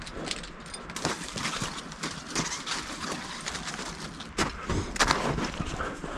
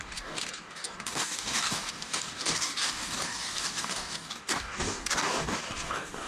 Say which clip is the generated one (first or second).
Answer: second